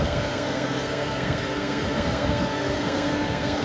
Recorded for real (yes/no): no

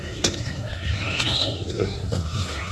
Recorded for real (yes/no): no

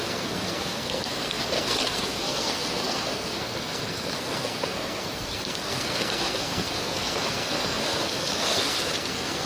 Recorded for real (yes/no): no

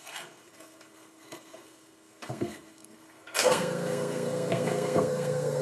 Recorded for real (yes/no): no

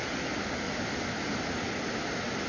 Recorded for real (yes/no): yes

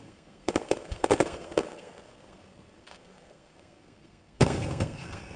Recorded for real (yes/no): no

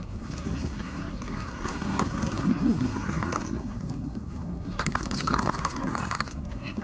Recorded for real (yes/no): no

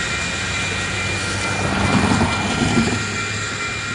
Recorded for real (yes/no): yes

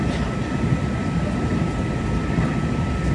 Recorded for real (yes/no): yes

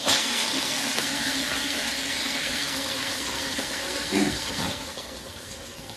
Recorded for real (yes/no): no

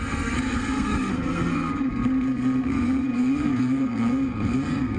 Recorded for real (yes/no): no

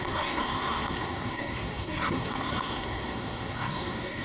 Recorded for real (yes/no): no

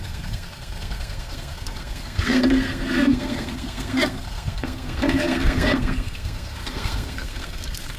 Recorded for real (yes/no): no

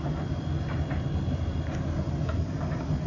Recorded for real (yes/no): yes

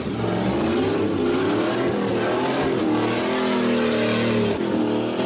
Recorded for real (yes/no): yes